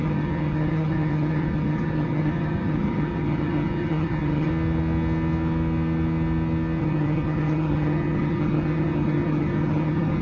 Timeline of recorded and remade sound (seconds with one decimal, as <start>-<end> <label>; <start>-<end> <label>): 0.0-4.5 remade; 4.5-6.8 recorded; 6.8-10.2 remade